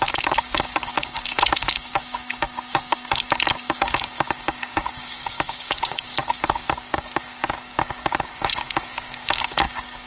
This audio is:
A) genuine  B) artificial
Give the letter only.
B